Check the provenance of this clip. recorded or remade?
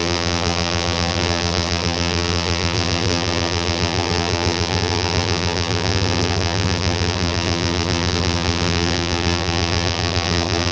remade